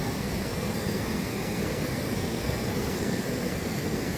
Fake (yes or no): yes